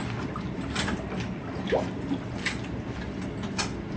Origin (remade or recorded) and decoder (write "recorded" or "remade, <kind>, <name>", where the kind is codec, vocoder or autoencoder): recorded